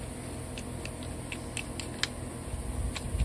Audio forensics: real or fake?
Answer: real